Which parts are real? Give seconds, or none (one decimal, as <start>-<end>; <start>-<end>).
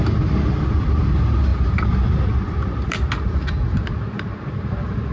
0.0-0.8